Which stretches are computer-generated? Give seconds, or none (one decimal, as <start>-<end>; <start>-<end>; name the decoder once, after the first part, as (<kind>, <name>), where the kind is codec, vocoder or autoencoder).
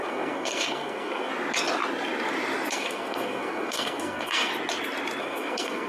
0.0-1.3 (codec, SNAC); 2.7-4.5; 5.2-5.9